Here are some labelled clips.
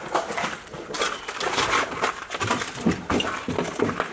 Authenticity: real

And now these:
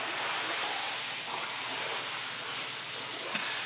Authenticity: real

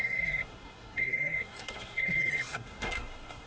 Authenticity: fake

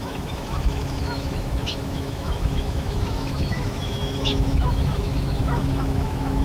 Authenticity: fake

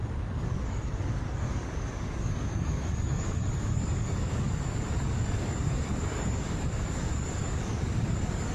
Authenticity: fake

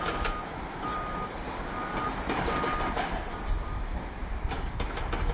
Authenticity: real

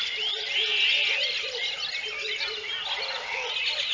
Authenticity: real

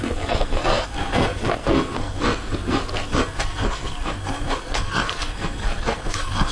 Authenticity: fake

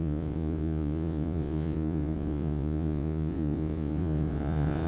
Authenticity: fake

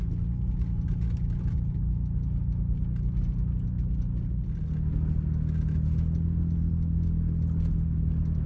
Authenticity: real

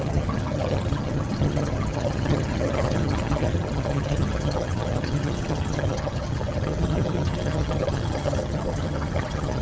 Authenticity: fake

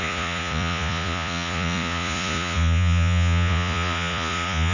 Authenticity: fake